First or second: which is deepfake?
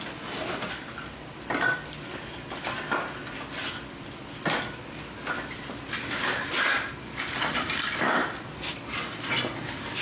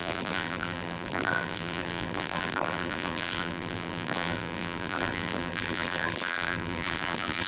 second